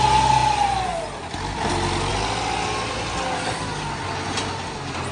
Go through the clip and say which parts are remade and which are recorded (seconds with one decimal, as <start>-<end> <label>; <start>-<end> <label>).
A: 0.0-5.1 recorded